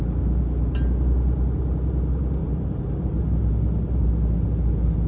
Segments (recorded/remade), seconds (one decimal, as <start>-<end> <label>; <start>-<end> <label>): 0.0-5.1 recorded